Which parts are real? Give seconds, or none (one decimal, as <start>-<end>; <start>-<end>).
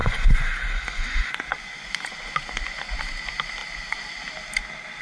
3.0-5.0